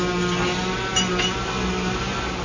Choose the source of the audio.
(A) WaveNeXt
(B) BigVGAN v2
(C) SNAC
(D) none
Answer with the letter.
D